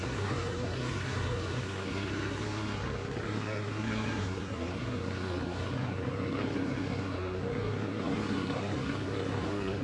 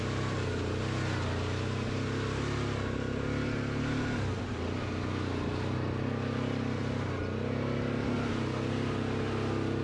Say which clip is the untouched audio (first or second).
second